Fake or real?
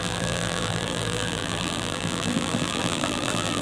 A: fake